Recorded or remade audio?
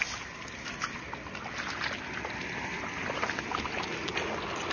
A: recorded